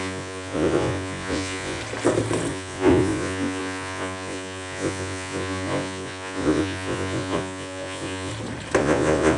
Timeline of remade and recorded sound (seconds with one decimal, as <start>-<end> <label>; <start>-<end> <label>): 0.0-1.8 remade; 1.8-2.5 recorded; 2.5-8.3 remade; 8.3-8.8 recorded; 8.8-9.4 remade